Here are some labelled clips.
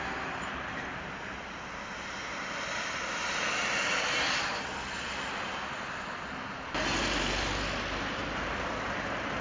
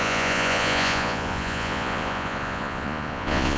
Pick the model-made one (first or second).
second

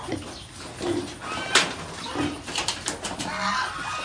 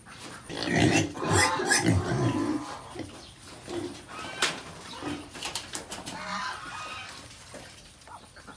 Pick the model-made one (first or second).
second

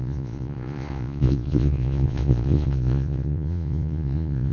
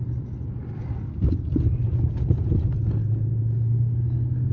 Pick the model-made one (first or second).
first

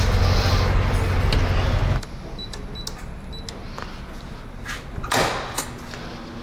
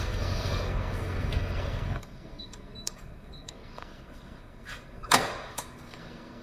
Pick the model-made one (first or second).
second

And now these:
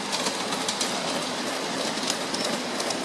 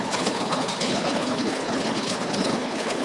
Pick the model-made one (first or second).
second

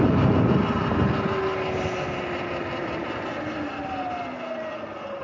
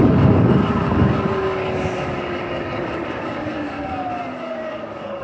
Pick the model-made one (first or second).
second